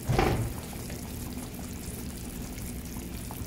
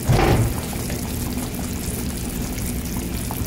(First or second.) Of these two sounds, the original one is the second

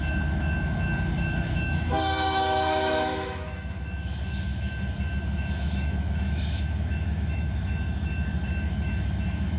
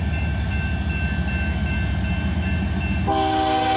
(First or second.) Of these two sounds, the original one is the second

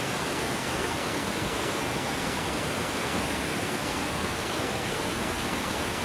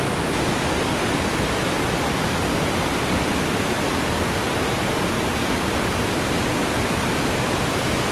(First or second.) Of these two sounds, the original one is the second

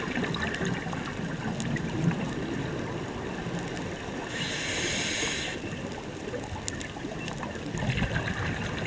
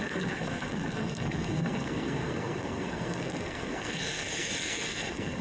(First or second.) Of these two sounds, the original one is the first